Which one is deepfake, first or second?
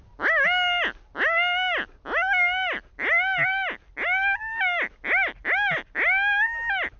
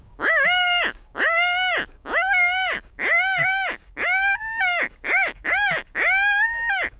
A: second